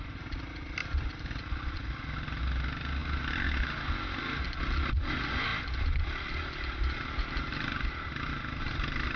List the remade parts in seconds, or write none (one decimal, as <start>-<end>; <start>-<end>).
none